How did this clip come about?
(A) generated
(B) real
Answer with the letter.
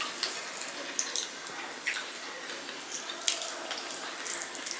B